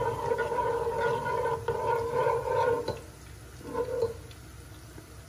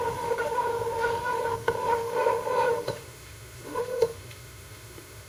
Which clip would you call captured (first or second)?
first